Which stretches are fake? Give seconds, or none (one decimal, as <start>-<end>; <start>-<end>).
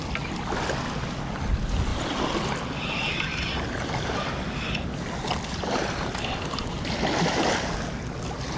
none